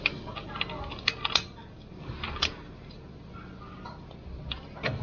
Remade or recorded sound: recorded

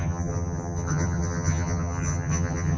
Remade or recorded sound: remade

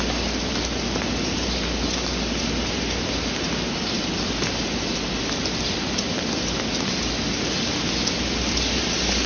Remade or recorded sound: recorded